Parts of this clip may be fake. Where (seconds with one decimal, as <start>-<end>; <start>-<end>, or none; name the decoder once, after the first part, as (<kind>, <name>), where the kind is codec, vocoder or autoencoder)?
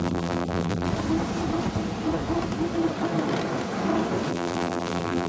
0.0-0.9 (vocoder, BigVGAN v2); 4.3-5.3